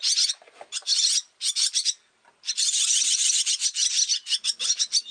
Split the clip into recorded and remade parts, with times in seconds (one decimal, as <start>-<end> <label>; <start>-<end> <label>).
0.0-5.1 recorded